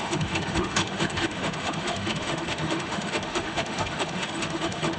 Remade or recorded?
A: remade